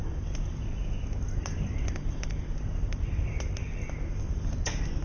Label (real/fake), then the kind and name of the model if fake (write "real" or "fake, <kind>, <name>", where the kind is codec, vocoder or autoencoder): real